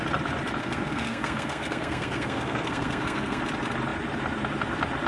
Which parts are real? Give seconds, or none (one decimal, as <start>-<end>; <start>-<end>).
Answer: 0.0-0.6; 3.4-5.1